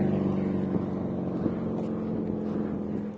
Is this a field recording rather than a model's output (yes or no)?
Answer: yes